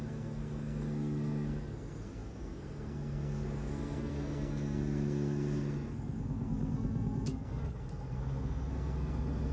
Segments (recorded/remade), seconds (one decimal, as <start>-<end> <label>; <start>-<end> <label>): 0.0-9.5 remade